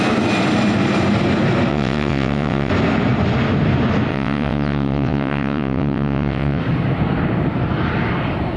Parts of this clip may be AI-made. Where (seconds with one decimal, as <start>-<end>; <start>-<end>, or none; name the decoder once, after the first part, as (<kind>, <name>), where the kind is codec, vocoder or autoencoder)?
1.7-2.7 (vocoder, WaveNeXt); 4.1-6.6